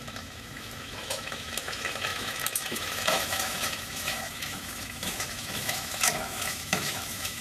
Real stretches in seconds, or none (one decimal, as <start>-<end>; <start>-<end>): none